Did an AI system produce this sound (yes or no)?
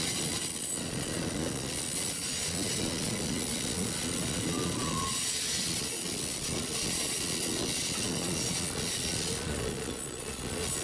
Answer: yes